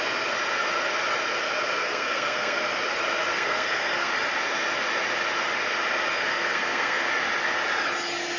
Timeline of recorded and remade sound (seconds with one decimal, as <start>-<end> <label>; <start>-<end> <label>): 0.0-1.8 recorded; 1.8-2.6 remade; 2.6-3.3 recorded; 3.3-4.1 remade; 4.1-6.1 recorded; 6.1-7.1 remade; 7.1-8.4 recorded